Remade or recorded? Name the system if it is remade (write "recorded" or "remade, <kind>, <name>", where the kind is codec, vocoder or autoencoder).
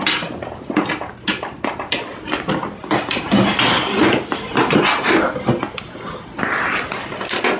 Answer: recorded